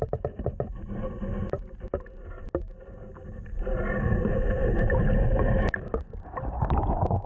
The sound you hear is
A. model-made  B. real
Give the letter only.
B